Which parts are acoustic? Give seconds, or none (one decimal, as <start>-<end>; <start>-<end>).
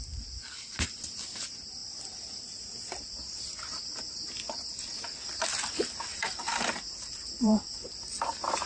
0.0-6.1; 7.8-8.7